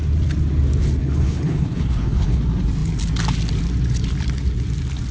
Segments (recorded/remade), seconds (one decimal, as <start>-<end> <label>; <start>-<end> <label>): 0.0-1.0 recorded; 1.0-2.4 remade; 2.4-5.1 recorded